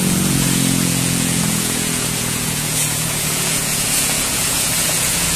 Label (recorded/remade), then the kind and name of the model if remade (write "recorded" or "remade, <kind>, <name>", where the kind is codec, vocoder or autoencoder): remade, vocoder, Vocos